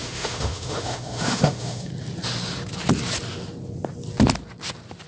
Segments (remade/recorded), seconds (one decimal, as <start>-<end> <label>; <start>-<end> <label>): 0.0-1.9 remade; 1.9-5.1 recorded

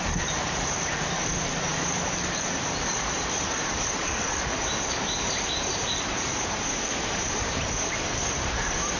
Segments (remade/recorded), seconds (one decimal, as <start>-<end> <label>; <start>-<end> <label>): 0.0-9.0 remade